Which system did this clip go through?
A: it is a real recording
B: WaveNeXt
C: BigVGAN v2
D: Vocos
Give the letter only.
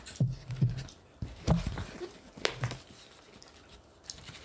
A